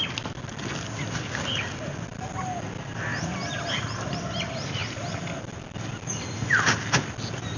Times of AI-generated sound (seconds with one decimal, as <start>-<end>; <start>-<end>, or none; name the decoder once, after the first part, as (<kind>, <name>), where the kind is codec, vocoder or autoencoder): none